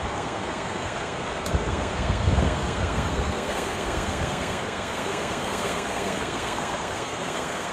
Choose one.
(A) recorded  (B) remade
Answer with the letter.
B